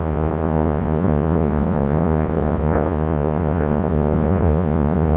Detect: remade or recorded remade